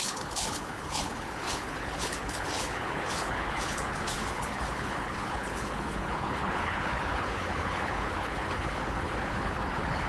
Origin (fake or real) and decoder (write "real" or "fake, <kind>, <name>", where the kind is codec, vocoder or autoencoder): fake, codec, HILCodec